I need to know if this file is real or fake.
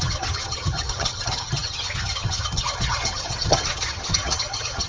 fake